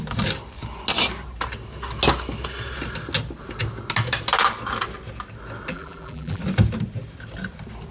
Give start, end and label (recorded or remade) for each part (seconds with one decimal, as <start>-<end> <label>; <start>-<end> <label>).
0.0-5.7 recorded; 5.7-6.4 remade; 6.4-7.9 recorded